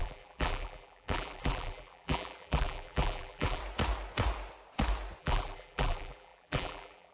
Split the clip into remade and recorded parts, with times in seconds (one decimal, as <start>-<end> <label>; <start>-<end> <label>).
0.0-3.6 remade; 3.6-5.2 recorded; 5.2-7.1 remade